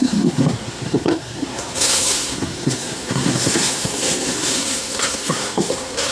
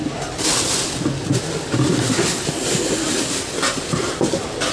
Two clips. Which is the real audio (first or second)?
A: second